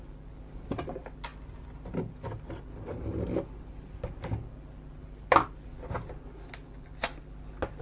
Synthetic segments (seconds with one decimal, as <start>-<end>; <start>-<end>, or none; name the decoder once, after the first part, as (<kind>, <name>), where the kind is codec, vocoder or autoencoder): none